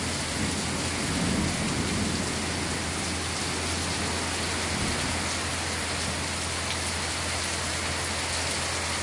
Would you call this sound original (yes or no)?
yes